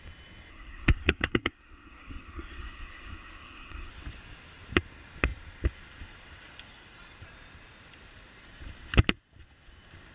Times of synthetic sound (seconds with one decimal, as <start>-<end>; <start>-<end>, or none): 0.5-3.9